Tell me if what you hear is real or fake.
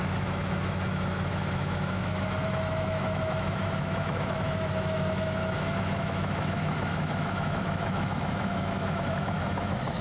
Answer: fake